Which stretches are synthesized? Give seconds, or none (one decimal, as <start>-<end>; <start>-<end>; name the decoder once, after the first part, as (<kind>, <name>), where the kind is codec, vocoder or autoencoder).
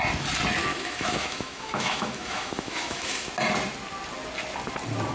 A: 0.7-3.3 (autoencoder, DAC-VAE)